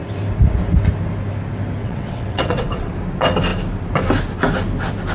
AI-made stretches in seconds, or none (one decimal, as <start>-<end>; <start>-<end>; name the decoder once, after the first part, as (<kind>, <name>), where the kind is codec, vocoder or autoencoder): 1.8-2.9 (vocoder, WaveNeXt)